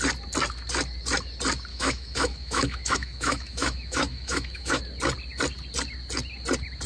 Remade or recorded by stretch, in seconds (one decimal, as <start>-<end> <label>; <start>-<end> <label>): 0.0-1.7 recorded; 1.7-4.8 remade; 4.8-6.9 recorded